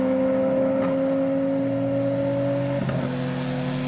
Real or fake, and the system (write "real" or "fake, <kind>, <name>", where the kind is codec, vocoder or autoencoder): real